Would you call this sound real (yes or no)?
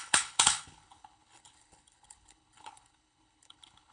no